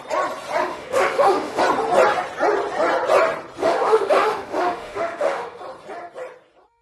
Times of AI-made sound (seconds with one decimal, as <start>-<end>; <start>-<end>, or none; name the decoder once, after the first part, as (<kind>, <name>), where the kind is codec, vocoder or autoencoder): 0.6-1.6 (autoencoder, DAC-VAE); 3.6-5.6